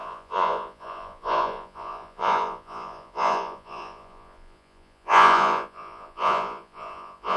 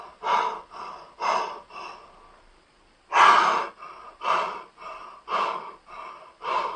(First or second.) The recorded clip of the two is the second